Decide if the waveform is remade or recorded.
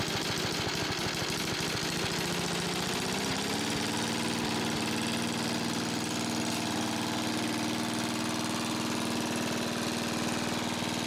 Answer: recorded